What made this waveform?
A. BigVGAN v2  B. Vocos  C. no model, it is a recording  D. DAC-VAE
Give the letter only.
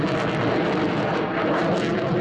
C